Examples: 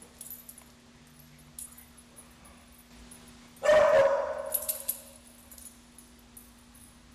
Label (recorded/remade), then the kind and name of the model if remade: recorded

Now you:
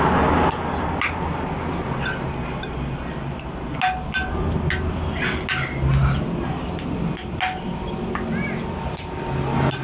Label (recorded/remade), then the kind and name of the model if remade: recorded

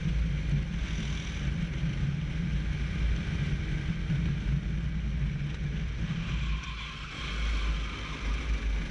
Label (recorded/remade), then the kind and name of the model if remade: recorded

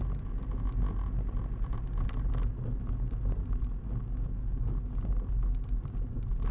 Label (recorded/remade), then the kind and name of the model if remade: recorded